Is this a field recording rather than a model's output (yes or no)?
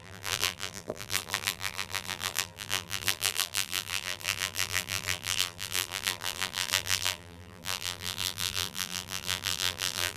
no